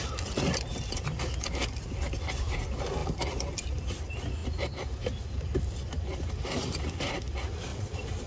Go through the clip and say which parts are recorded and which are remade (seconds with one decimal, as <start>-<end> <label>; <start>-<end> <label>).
0.0-0.7 recorded; 0.7-1.8 remade; 1.8-3.0 recorded; 3.0-4.0 remade; 4.0-7.7 recorded; 7.7-8.3 remade